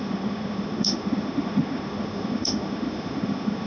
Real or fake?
fake